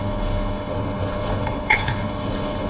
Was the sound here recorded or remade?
remade